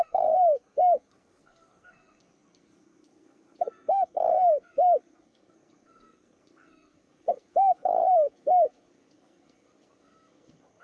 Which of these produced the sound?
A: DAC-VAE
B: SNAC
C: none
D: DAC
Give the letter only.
B